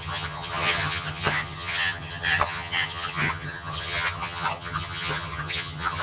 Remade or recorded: remade